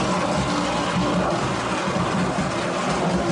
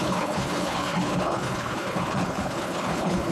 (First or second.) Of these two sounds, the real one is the first